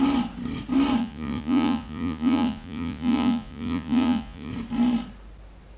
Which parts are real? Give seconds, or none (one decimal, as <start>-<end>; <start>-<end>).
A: 0.0-1.0; 4.5-5.8